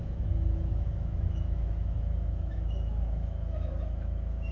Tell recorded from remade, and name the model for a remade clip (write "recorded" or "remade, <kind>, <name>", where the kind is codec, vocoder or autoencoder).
remade, autoencoder, DAC-VAE